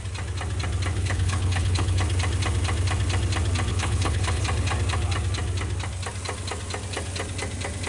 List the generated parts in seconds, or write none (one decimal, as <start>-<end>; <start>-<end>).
0.9-2.0; 3.7-4.4